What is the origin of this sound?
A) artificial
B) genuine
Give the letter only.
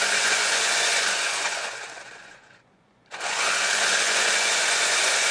A